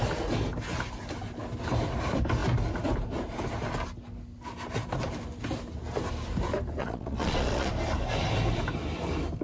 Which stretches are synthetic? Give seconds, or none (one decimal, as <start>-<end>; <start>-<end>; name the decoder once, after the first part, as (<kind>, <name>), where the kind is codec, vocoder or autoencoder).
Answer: 6.8-7.7 (vocoder, Vocos)